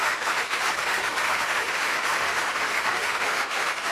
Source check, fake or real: fake